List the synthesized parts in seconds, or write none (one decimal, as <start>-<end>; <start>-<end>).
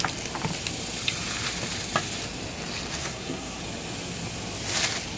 3.0-3.6